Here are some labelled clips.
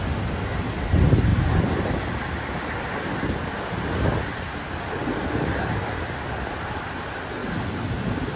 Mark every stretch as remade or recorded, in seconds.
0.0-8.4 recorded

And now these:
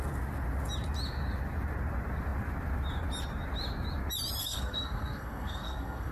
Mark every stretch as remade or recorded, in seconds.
0.0-4.4 recorded; 4.4-6.1 remade

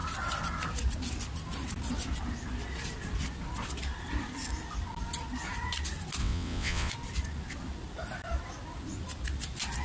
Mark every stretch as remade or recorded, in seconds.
0.0-6.2 recorded; 6.2-6.9 remade; 6.9-9.8 recorded

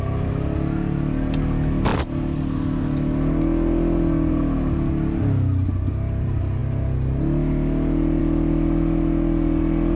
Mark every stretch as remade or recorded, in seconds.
0.0-10.0 recorded